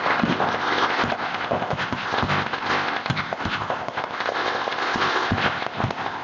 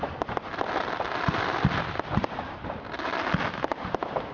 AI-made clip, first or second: first